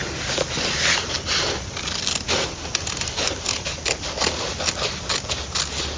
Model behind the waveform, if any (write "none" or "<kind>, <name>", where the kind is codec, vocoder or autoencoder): none